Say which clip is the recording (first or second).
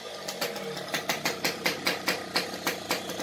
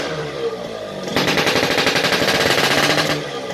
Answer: first